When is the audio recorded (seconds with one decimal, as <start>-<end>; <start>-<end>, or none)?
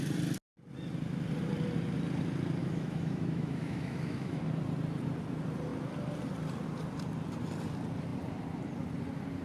0.0-2.6; 4.4-9.4